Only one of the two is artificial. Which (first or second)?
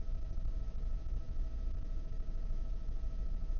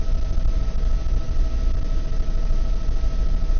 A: first